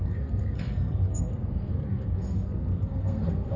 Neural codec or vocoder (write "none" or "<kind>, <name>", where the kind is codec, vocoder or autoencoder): codec, SNAC